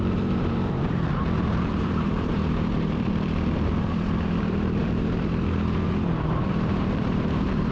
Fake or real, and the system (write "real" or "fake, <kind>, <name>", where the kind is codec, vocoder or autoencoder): fake, vocoder, BigVGAN v2